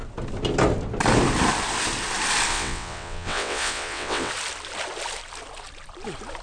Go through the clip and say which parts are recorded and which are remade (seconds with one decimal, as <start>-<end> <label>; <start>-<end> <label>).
0.0-2.5 recorded; 2.5-4.3 remade; 4.3-6.4 recorded